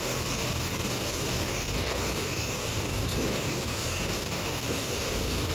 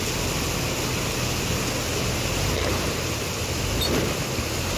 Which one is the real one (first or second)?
second